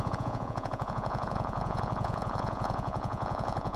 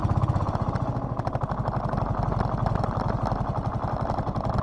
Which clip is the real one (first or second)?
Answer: second